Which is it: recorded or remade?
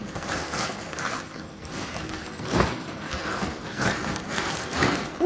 remade